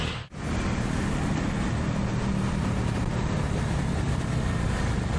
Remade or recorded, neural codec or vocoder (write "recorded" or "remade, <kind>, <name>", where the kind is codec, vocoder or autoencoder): recorded